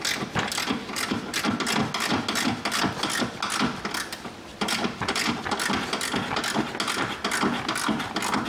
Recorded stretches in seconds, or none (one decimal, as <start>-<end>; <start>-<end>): 0.0-4.5; 5.8-8.5